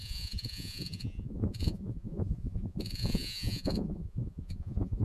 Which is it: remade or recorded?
remade